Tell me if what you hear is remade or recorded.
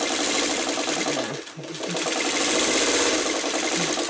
recorded